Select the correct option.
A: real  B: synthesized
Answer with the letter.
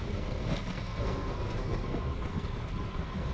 B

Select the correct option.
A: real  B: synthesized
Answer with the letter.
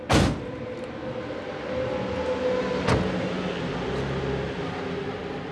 A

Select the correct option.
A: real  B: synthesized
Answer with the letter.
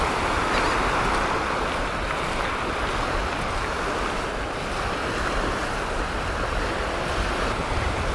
A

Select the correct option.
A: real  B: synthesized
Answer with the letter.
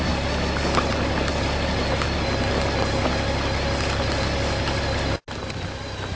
A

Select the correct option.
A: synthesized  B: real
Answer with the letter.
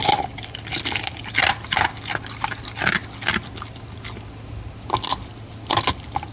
B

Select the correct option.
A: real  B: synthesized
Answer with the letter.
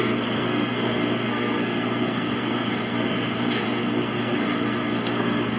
B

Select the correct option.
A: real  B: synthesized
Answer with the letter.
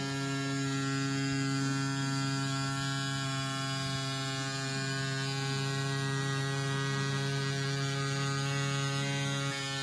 A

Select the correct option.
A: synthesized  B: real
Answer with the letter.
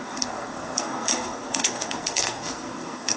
A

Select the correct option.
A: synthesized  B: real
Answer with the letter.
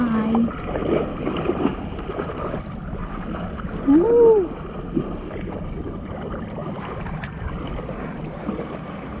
B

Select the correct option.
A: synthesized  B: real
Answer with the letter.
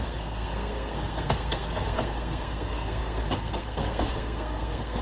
A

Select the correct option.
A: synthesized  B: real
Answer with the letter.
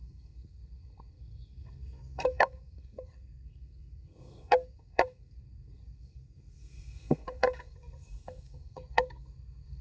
A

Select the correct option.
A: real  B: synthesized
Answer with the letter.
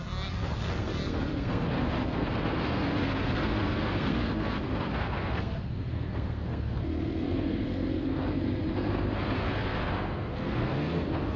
B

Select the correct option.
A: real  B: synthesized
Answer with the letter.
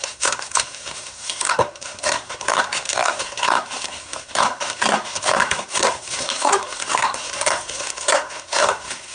B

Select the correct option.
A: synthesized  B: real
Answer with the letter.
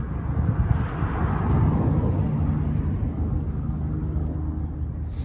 B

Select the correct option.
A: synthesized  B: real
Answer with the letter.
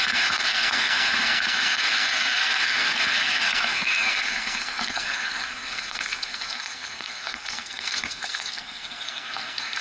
A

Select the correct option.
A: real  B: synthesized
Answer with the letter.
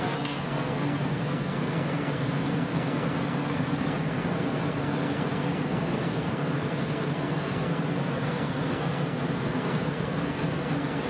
B